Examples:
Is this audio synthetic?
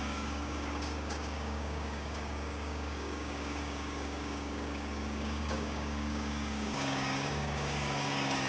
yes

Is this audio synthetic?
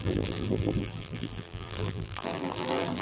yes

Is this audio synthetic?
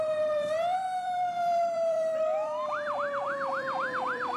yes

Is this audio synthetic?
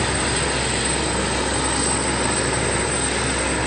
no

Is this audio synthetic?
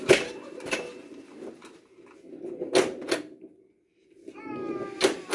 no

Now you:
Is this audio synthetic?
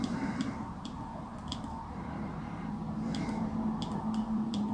yes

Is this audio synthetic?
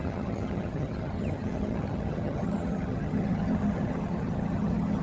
yes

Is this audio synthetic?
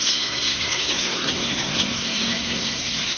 yes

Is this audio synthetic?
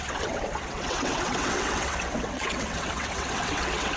yes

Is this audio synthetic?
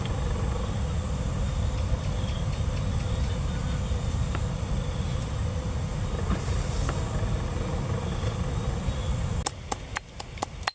no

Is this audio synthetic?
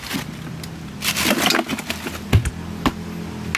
no